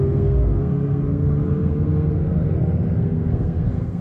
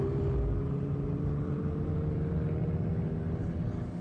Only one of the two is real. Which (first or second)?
second